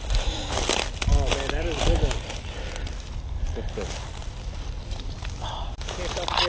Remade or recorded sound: recorded